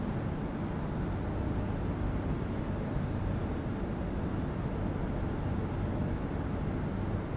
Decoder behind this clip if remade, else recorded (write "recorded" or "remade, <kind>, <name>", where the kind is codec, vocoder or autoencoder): recorded